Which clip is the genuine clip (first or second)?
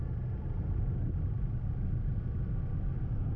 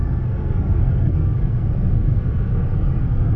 first